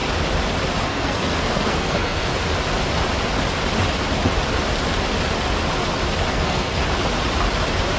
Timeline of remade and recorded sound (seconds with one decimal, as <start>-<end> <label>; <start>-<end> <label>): 0.0-0.8 recorded; 0.8-2.3 remade; 2.3-6.3 recorded; 6.3-6.8 remade; 6.8-8.0 recorded